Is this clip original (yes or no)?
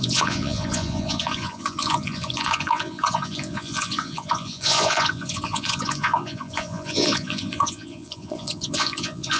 no